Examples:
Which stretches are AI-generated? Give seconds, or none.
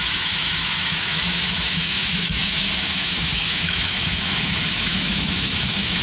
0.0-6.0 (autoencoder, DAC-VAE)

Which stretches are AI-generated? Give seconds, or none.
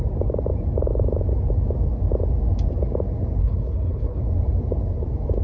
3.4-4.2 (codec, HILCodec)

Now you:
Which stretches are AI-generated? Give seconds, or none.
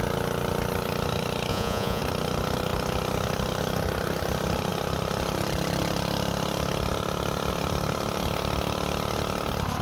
1.5-2.0 (vocoder, Vocos)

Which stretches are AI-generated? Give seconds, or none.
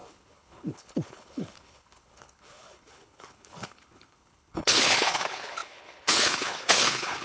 0.0-7.2 (codec, HILCodec)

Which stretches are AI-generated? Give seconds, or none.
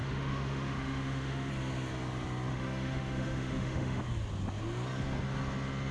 0.0-1.5 (autoencoder, DAC-VAE); 2.5-4.0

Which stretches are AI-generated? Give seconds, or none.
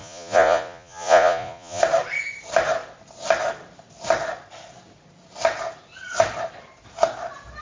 0.0-1.8 (vocoder, Vocos)